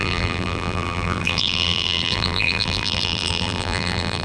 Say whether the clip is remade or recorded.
remade